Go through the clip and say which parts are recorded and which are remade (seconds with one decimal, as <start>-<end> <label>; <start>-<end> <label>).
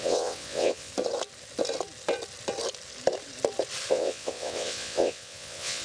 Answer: 0.0-0.9 remade; 0.9-3.9 recorded; 3.9-5.8 remade